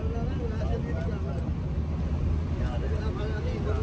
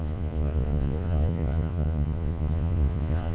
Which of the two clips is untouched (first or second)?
first